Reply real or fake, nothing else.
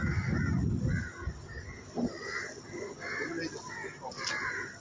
real